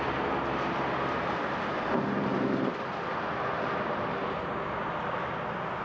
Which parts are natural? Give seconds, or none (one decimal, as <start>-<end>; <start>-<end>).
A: 0.0-5.8